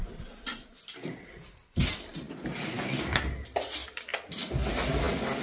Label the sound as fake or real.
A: real